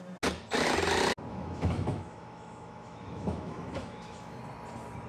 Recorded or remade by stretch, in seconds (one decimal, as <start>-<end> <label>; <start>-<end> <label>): 0.0-1.3 recorded; 1.3-4.4 remade; 4.4-5.1 recorded